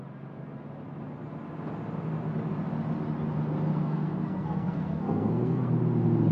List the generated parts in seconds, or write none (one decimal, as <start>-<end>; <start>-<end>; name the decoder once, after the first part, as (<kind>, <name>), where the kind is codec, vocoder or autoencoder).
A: 3.7-5.7 (codec, SNAC)